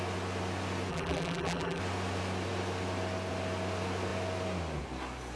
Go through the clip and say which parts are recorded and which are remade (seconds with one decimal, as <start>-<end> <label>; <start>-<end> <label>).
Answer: 0.0-0.9 recorded; 0.9-1.8 remade; 1.8-5.4 recorded